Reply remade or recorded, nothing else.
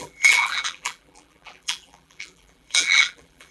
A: remade